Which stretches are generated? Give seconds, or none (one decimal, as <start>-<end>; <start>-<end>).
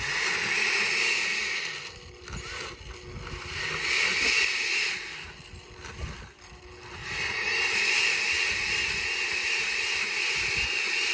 none